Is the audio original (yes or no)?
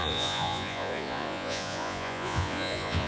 no